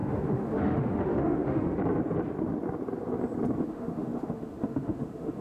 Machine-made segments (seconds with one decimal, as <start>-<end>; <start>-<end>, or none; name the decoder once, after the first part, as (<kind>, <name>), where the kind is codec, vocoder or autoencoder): 0.0-1.8 (autoencoder, DAC-VAE); 3.6-5.4